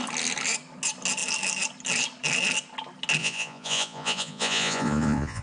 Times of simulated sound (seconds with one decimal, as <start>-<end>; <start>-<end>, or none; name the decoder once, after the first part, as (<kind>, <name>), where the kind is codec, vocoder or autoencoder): 3.2-5.4 (vocoder, Vocos)